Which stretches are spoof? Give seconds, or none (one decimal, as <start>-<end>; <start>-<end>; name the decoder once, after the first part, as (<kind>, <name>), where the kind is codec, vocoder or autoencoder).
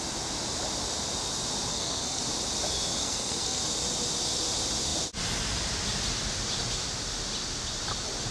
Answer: 1.7-2.2 (codec, SNAC); 3.0-3.6